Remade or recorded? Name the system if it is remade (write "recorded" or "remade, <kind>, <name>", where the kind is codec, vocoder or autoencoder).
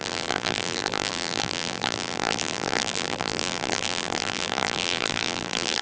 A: remade, vocoder, BigVGAN v2